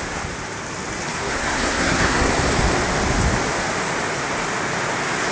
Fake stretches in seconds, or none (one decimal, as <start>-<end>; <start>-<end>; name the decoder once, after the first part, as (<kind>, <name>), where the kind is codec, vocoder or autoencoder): 1.1-2.3 (codec, SNAC)